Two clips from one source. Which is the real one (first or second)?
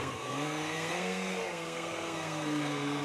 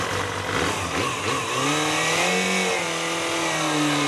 second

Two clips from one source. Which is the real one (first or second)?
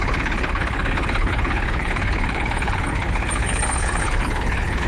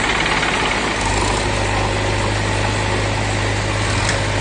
second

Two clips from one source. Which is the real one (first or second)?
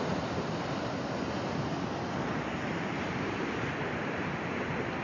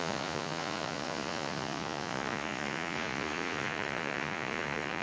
first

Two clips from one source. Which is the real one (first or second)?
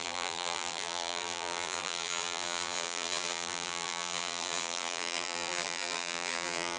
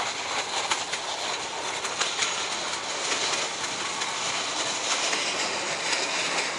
second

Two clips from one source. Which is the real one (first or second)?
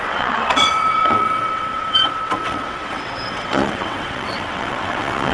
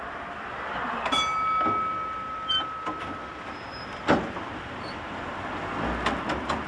second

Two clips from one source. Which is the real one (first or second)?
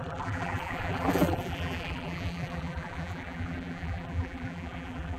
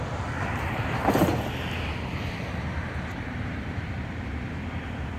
second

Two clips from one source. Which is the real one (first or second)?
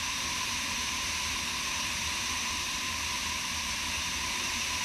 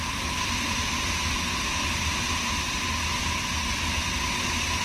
second